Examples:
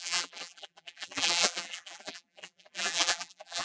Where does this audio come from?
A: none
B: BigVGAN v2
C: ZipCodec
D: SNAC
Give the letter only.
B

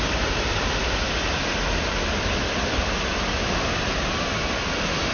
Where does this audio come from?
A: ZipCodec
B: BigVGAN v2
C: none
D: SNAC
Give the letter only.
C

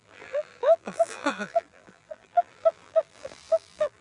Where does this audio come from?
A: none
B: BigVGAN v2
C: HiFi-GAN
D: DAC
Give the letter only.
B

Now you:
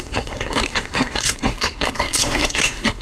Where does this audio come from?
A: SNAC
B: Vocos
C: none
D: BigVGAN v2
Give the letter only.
A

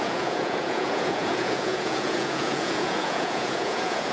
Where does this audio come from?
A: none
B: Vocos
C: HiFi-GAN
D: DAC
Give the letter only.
B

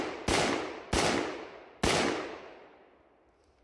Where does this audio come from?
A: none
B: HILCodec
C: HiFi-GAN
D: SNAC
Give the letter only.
A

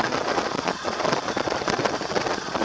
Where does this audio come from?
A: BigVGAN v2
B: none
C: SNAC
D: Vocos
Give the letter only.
D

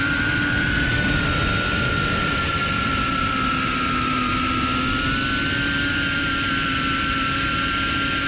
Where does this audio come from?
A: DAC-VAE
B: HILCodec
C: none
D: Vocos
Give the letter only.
C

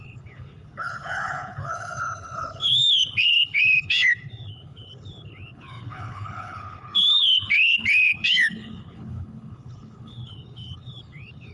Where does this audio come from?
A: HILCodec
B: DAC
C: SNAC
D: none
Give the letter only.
A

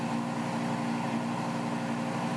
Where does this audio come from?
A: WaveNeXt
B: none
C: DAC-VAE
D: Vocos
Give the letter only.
B